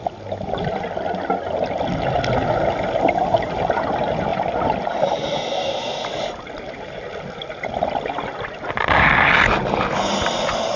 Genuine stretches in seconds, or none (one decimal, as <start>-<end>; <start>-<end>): 0.0-10.8